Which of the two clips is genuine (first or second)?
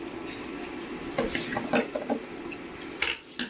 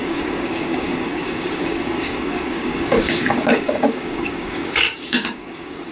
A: first